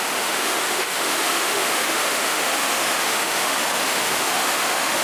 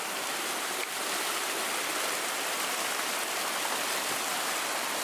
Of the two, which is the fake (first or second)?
first